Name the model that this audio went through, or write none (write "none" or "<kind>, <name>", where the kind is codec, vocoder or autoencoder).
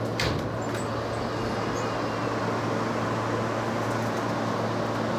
none